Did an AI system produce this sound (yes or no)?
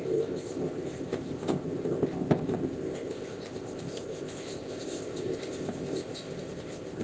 yes